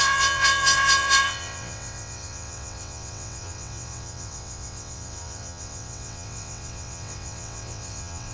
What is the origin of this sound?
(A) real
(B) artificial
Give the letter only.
B